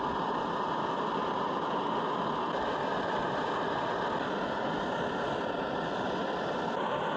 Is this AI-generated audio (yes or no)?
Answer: no